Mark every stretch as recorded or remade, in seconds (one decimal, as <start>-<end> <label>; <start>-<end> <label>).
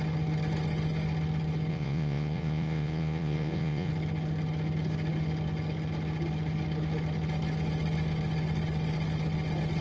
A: 0.0-1.7 recorded; 1.7-3.9 remade; 3.9-9.8 recorded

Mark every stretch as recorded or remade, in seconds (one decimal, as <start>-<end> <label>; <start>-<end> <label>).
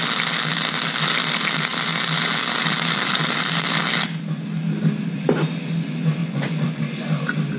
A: 0.0-6.2 recorded; 6.2-6.8 remade; 6.8-7.6 recorded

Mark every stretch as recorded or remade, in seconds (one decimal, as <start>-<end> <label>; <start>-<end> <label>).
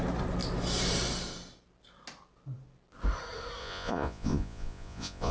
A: 0.0-3.6 recorded; 3.6-5.3 remade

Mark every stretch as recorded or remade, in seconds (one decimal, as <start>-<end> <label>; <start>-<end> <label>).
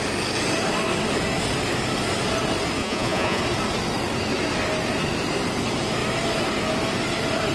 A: 0.0-2.8 recorded; 2.8-3.4 remade; 3.4-7.5 recorded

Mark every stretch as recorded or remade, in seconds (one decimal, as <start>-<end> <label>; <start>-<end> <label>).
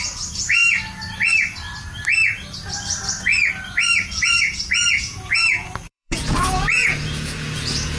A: 0.0-0.6 remade; 0.6-4.0 recorded; 4.0-8.0 remade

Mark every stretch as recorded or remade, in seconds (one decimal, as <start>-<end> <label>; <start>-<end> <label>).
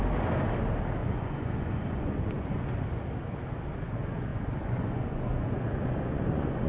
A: 0.0-1.0 recorded; 1.0-2.7 remade; 2.7-4.3 recorded; 4.3-6.7 remade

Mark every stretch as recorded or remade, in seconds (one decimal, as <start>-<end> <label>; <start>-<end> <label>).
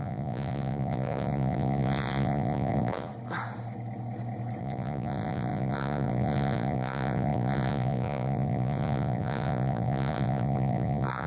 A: 0.0-3.1 remade; 3.1-4.6 recorded; 4.6-11.3 remade